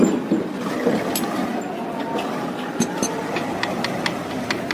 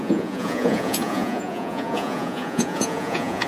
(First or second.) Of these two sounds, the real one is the first